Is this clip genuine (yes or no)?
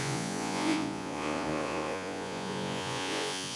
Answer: no